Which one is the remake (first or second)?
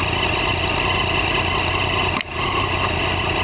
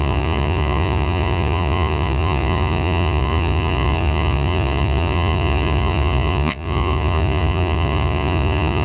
second